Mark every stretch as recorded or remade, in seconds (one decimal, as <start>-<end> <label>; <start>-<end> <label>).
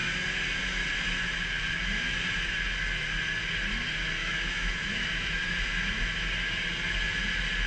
0.0-4.2 recorded; 4.2-5.4 remade; 5.4-7.7 recorded